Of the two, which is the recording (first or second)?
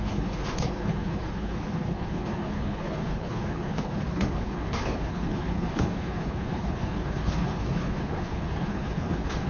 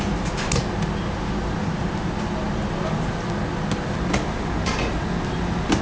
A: second